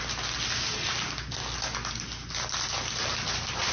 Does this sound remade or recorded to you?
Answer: recorded